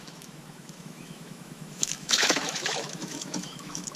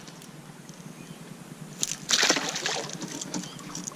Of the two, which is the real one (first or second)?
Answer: second